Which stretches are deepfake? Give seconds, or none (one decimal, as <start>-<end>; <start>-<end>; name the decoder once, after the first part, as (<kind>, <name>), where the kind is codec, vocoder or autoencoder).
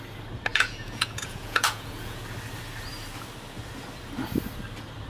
0.5-2.2 (vocoder, Vocos)